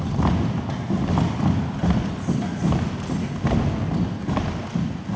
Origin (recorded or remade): recorded